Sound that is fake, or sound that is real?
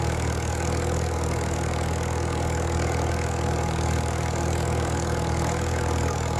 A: fake